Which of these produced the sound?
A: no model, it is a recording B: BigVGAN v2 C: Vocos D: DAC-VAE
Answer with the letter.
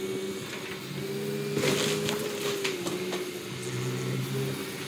A